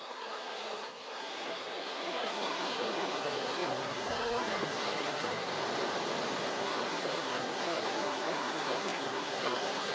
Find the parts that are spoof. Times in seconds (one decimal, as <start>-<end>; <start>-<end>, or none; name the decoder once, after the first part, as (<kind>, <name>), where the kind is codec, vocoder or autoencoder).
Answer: 0.0-5.5 (codec, SNAC); 6.5-9.9